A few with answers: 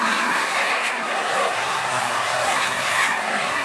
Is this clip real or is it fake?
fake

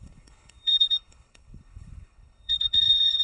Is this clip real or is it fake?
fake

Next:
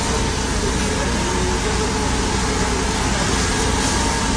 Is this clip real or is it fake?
real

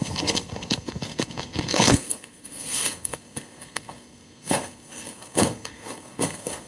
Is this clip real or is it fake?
fake